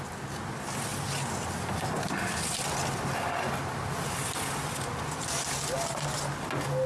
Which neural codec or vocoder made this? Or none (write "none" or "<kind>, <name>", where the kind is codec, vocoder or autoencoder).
none